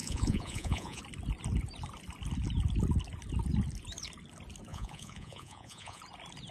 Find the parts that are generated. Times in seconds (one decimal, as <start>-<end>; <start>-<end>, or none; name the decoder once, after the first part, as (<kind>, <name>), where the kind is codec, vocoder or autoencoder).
0.0-1.0 (vocoder, Vocos); 4.7-6.0